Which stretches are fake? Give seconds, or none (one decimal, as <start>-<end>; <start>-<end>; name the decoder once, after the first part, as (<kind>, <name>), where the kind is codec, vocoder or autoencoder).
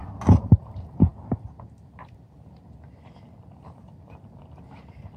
none